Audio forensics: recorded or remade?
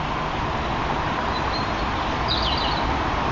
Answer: recorded